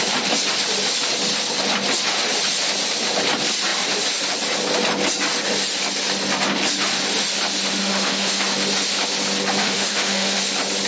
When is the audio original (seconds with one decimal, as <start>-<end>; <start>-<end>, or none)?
0.0-7.8; 8.4-9.6; 10.4-10.9